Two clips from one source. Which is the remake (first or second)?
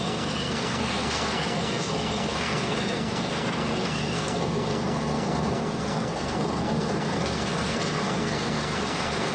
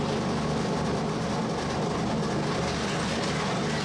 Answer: first